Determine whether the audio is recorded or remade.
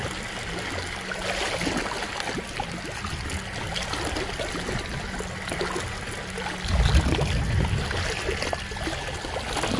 recorded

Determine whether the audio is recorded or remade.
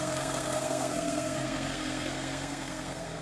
remade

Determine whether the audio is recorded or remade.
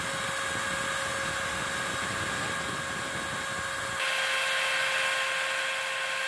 recorded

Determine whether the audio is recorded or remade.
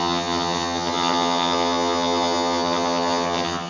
remade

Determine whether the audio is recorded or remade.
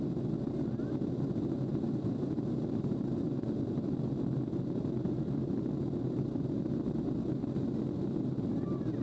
recorded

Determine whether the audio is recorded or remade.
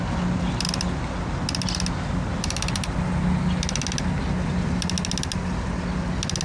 recorded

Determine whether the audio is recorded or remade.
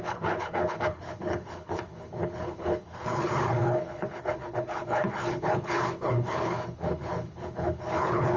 remade